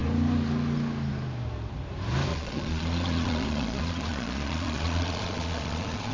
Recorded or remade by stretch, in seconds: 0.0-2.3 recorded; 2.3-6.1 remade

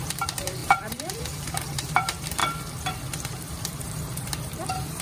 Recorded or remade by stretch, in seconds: 0.0-2.4 remade; 2.4-3.4 recorded; 3.4-5.0 remade

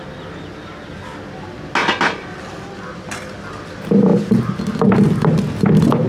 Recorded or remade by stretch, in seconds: 0.0-6.1 recorded